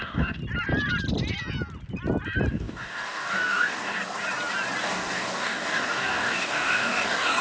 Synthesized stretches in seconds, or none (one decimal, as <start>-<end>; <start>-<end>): 0.0-0.4; 2.5-4.0; 4.8-7.4